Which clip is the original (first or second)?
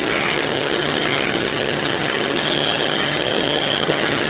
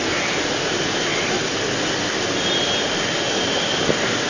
second